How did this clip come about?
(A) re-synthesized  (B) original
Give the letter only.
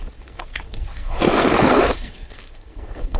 A